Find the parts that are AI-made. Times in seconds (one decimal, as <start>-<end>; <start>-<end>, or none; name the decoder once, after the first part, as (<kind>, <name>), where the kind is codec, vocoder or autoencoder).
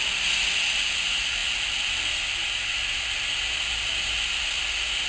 none